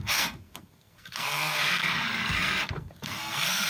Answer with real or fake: fake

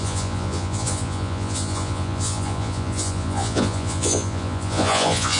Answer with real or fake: fake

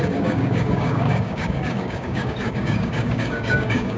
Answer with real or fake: fake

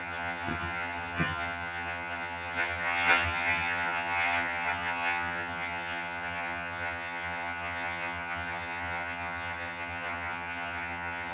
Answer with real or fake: fake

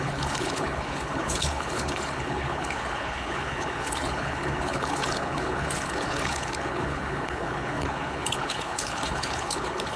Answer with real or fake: fake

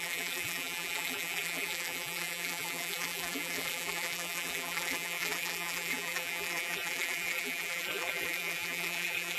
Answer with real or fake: fake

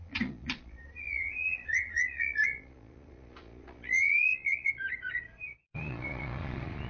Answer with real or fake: fake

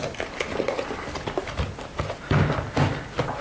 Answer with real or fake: real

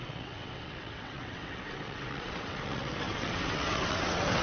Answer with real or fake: fake